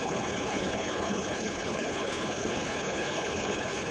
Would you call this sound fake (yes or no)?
yes